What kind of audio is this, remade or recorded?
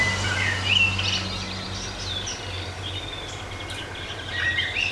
recorded